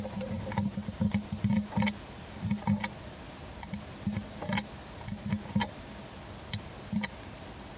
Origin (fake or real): real